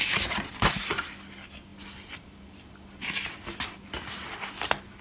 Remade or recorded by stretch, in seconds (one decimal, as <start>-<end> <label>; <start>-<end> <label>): 0.0-0.7 remade; 0.7-5.0 recorded